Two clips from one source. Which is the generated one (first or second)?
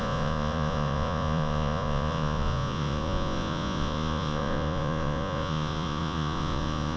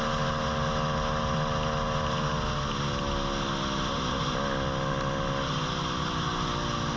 first